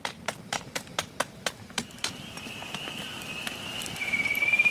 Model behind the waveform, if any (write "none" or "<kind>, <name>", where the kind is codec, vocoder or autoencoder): vocoder, BigVGAN v2